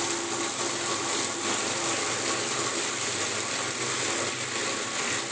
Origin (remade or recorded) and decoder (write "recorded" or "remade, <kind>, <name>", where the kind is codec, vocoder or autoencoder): recorded